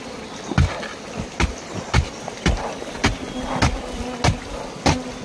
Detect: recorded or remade recorded